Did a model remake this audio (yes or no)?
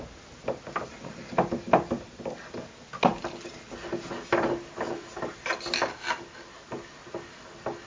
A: no